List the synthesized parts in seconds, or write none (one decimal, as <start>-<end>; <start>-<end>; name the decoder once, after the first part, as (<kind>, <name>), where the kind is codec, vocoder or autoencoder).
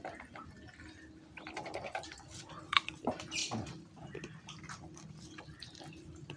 none